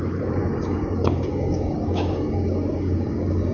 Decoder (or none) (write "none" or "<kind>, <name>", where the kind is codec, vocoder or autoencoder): codec, DAC